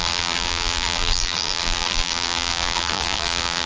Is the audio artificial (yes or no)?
yes